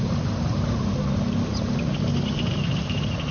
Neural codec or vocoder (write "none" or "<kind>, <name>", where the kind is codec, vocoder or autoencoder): none